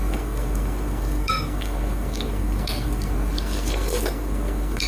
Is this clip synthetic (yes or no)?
yes